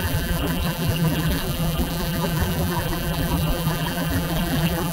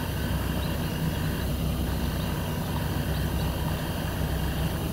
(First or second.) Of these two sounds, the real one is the second